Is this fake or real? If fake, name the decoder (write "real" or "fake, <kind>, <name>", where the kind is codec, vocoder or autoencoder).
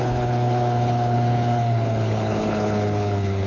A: fake, codec, HILCodec